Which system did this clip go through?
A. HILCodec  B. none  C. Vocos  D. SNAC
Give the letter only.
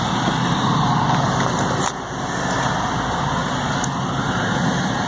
B